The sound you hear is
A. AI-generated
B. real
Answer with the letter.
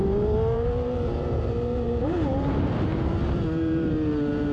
A